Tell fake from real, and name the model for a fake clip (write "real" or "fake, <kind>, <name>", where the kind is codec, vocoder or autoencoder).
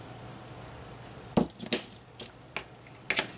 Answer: real